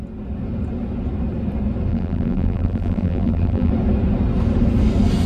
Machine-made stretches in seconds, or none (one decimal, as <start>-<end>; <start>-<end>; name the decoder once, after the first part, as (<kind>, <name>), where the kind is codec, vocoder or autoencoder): 1.9-3.7 (vocoder, BigVGAN v2)